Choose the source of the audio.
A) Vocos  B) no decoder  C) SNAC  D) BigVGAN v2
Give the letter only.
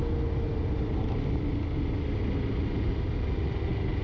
B